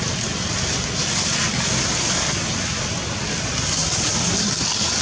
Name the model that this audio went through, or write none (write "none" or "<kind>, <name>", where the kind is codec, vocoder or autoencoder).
none